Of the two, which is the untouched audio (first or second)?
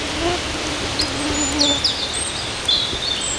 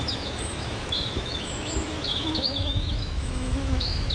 first